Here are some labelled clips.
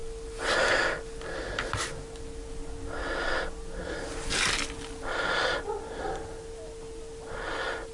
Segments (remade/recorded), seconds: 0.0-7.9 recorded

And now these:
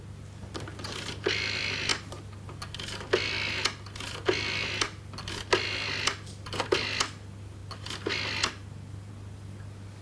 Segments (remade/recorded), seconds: 0.0-10.0 recorded

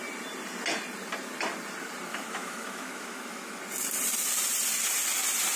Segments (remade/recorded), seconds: 0.0-2.1 recorded; 2.1-3.6 remade; 3.6-5.6 recorded

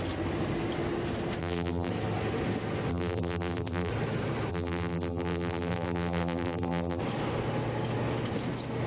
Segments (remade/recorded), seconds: 0.0-1.4 recorded; 1.4-1.9 remade; 1.9-2.9 recorded; 2.9-3.9 remade; 3.9-4.5 recorded; 4.5-7.0 remade; 7.0-8.9 recorded

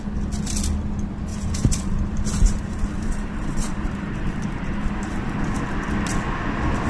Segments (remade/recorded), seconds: 0.0-1.3 recorded; 1.3-5.4 remade; 5.4-6.9 recorded

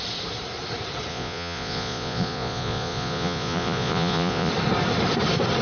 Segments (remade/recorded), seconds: 0.0-1.1 recorded; 1.1-4.5 remade; 4.5-5.6 recorded

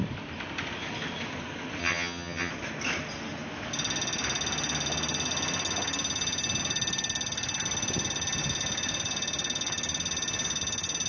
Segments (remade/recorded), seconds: 0.0-1.8 recorded; 1.8-2.5 remade; 2.5-11.1 recorded